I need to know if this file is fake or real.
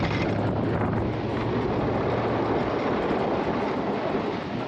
real